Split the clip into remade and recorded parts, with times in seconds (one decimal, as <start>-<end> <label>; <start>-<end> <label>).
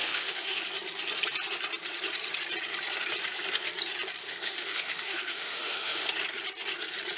0.0-0.6 remade; 0.6-4.2 recorded; 4.2-6.1 remade; 6.1-7.2 recorded